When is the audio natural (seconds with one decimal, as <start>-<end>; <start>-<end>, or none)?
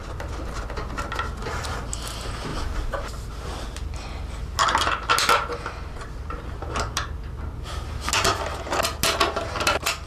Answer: 0.0-10.1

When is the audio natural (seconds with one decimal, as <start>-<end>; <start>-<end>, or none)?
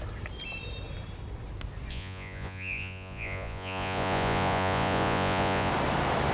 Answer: 0.0-1.9; 5.7-6.3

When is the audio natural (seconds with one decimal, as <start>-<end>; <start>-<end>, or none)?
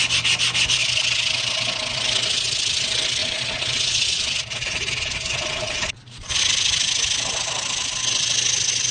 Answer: 0.0-3.2; 6.4-8.9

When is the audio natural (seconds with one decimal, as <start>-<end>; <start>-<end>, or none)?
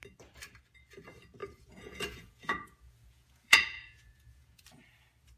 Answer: 0.0-1.4; 4.6-5.4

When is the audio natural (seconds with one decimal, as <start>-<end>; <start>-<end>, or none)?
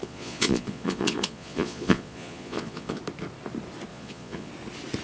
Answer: 3.0-3.9; 4.5-5.0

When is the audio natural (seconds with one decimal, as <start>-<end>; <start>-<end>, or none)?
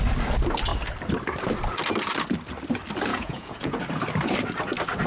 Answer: 0.0-3.1; 3.8-5.1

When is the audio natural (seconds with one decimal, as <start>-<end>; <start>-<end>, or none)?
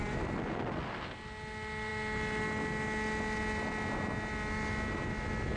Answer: 0.0-5.6